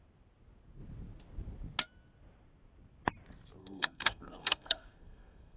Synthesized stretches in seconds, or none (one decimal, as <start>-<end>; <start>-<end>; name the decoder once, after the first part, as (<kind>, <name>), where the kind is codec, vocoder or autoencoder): 3.6-5.6 (codec, SNAC)